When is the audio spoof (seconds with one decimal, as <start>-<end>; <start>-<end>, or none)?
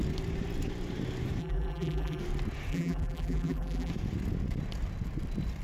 1.4-2.2; 2.7-3.9